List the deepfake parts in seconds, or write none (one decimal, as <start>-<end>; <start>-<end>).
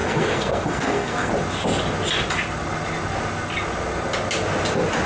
0.0-1.3